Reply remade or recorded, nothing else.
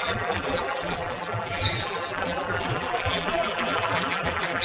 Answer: remade